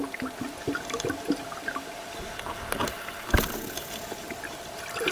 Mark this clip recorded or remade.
recorded